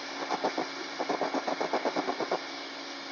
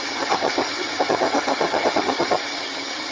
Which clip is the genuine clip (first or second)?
first